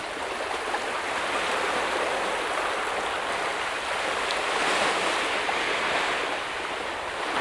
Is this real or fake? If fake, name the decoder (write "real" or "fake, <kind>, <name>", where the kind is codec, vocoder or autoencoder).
real